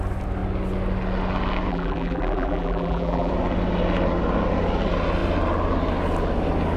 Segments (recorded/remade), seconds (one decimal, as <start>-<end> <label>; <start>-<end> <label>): 0.0-1.7 recorded; 1.7-3.3 remade; 3.3-6.8 recorded